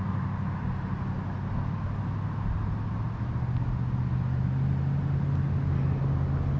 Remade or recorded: recorded